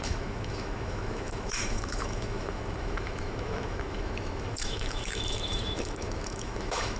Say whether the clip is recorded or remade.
remade